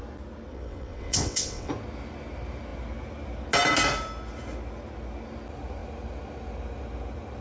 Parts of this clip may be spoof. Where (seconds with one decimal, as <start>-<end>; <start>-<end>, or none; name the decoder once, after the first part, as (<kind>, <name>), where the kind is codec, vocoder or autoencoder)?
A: 0.5-1.7 (vocoder, WaveNeXt)